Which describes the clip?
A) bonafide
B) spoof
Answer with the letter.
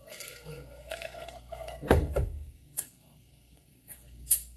B